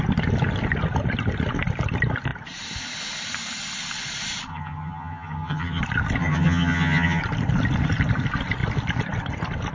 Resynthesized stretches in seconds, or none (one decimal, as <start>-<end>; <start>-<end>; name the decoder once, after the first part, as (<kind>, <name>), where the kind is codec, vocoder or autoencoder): 4.5-5.8 (vocoder, HiFi-GAN); 6.2-7.2